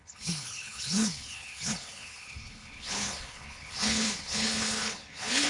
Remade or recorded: remade